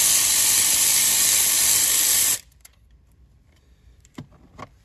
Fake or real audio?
fake